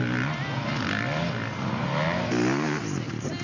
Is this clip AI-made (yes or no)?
no